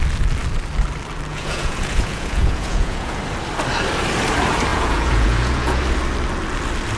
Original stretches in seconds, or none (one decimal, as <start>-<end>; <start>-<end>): 0.0-1.3; 3.2-4.7; 5.8-7.0